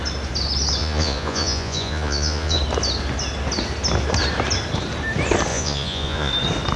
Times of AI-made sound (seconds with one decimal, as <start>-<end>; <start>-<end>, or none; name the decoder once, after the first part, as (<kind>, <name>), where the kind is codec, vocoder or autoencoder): 0.8-2.6 (vocoder, Vocos); 5.5-6.3